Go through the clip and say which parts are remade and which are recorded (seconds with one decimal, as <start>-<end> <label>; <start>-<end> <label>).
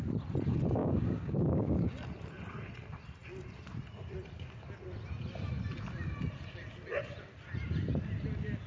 0.0-0.8 recorded; 0.8-1.9 remade; 1.9-8.7 recorded